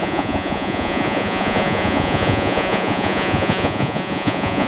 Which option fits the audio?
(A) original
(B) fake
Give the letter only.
B